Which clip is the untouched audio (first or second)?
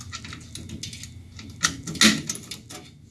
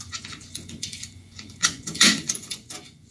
first